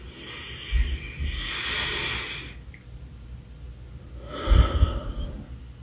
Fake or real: real